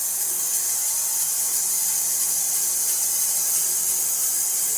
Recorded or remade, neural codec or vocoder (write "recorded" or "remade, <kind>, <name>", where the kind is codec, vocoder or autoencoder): remade, vocoder, BigVGAN v2